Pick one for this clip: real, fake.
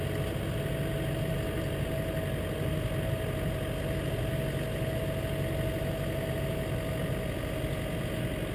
real